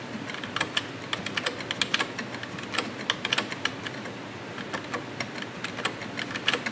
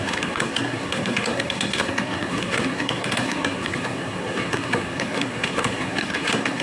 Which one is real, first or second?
first